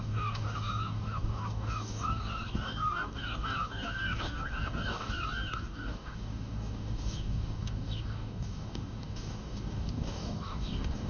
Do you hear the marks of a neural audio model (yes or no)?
yes